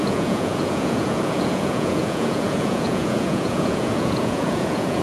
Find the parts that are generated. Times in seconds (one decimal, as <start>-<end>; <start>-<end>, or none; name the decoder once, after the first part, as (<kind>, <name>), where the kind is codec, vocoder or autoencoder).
0.0-5.0 (vocoder, Vocos)